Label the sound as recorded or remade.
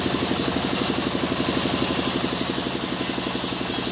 recorded